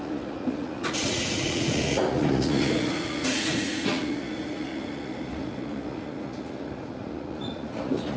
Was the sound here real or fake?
fake